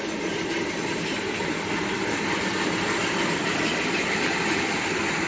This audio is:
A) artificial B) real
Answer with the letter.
B